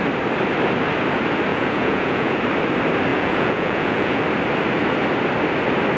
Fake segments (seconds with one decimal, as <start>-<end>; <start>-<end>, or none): 1.5-2.4; 3.1-4.2